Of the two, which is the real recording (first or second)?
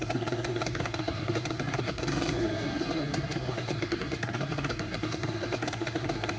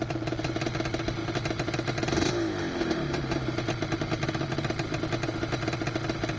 second